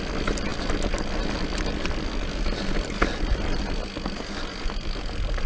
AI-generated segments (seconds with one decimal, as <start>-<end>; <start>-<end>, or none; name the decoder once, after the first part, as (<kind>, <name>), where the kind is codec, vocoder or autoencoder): none